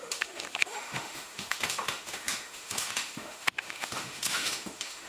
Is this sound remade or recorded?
remade